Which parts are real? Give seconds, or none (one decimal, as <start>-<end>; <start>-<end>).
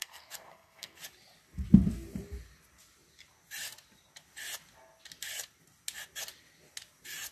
1.0-7.3